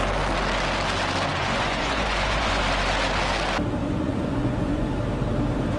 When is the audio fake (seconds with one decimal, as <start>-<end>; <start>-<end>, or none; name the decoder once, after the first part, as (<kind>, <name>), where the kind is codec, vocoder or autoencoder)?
1.3-2.6 (vocoder, Vocos); 3.8-4.9